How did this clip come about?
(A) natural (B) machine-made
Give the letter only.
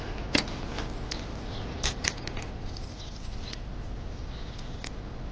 A